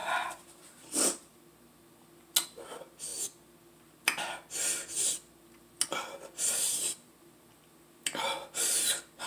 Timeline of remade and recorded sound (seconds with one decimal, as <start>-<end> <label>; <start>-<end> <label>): 0.0-1.4 remade; 1.4-9.3 recorded